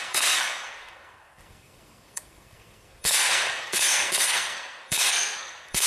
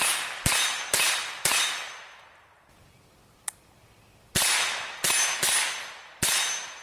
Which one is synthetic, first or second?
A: first